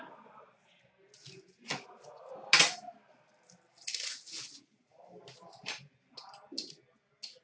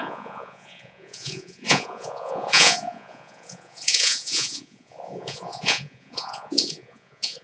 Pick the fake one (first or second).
second